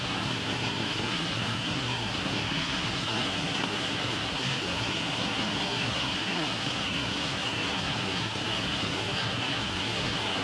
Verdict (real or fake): fake